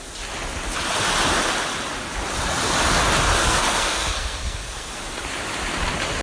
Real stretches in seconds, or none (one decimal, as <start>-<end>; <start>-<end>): 0.0-3.4; 5.0-6.2